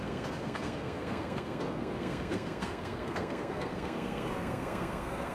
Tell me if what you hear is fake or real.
fake